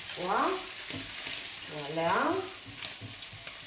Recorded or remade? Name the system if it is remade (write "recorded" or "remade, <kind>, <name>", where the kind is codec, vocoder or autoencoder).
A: recorded